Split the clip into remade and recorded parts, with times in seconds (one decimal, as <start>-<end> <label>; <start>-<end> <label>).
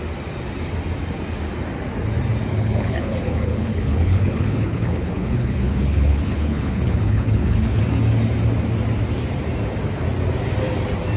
0.0-2.5 recorded; 2.5-7.8 remade; 7.8-11.2 recorded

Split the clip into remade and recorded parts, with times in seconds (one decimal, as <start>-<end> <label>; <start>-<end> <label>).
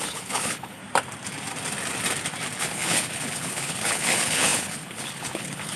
0.0-0.8 remade; 0.8-2.6 recorded; 2.6-5.8 remade